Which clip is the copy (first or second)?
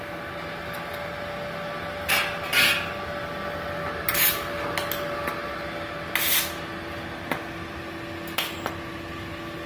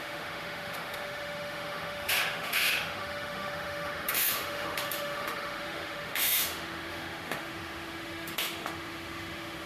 second